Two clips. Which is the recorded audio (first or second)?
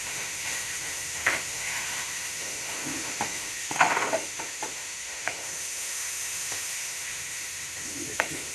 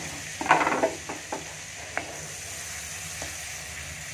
second